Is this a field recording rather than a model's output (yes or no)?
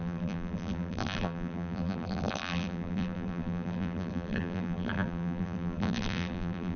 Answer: no